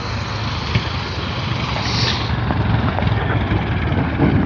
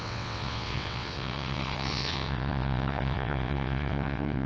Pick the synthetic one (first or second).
second